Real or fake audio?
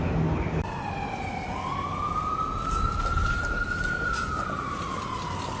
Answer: real